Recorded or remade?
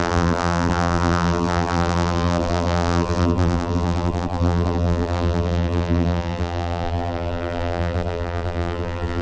remade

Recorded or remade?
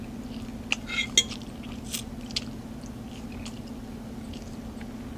recorded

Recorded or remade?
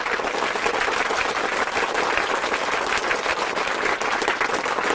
recorded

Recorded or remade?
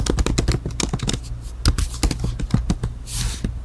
recorded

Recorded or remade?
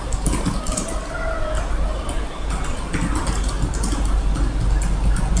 recorded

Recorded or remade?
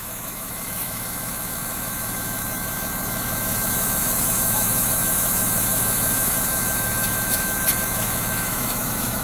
remade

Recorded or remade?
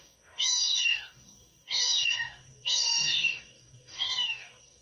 remade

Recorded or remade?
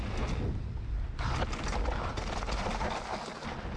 recorded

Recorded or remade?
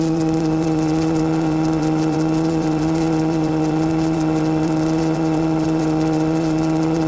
remade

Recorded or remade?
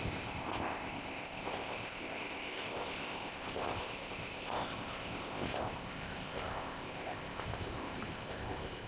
remade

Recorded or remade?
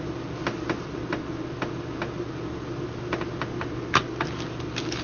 recorded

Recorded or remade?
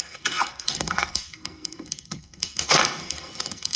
remade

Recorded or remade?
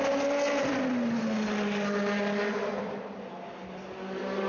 recorded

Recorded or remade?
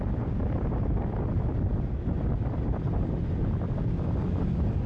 recorded